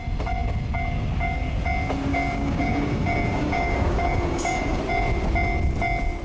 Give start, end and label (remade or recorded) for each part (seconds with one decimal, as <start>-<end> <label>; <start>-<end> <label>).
0.0-2.1 recorded; 2.1-4.8 remade; 4.8-6.2 recorded